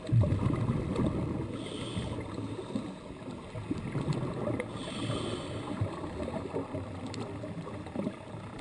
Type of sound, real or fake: real